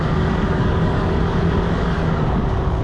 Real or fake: fake